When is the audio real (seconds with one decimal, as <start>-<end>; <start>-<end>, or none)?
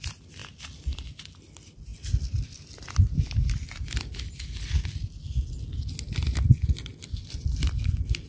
0.0-0.4; 1.2-1.9; 3.5-6.9; 7.9-8.3